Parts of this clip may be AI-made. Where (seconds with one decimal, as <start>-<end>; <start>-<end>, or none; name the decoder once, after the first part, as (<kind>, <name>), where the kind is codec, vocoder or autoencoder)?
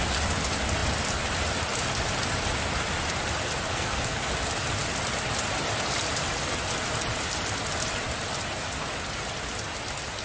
3.7-4.3 (codec, SNAC)